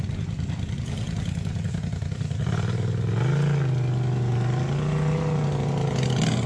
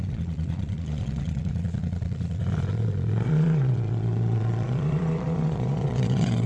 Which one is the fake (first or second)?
second